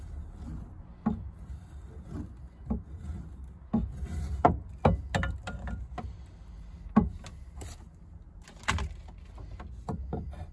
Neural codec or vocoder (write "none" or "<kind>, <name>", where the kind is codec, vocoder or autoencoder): none